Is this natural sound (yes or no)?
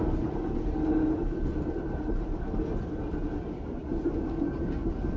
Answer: yes